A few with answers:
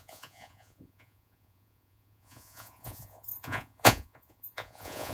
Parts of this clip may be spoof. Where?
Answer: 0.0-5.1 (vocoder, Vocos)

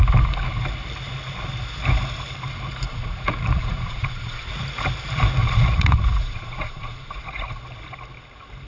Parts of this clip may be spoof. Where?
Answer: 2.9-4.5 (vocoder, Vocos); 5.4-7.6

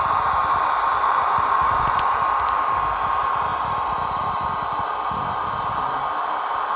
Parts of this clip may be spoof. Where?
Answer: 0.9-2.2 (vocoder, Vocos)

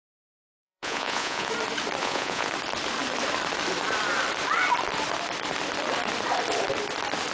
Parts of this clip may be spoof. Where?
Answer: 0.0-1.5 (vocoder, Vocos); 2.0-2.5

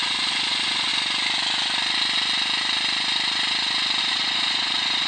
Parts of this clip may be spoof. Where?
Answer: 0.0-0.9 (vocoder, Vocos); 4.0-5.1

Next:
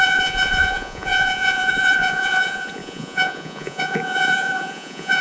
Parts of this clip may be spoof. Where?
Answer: 0.0-5.2 (vocoder, Vocos)

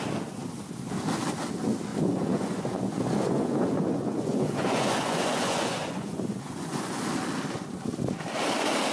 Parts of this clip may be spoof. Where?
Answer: 1.9-7.0 (vocoder, Vocos)